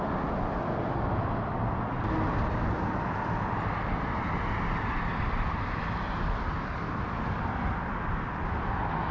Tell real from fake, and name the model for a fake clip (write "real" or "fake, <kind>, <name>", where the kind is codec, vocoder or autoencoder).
real